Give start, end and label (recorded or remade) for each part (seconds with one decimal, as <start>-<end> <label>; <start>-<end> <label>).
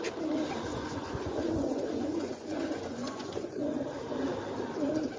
0.0-0.7 recorded; 0.7-3.8 remade; 3.8-5.2 recorded